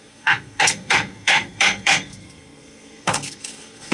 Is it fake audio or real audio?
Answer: fake